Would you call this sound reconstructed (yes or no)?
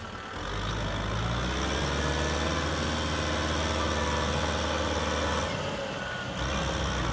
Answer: no